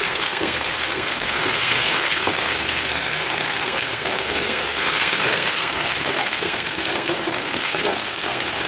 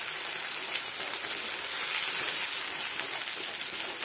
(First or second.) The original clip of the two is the second